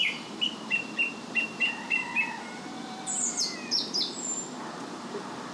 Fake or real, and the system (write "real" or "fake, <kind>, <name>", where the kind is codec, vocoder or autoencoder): fake, vocoder, BigVGAN v2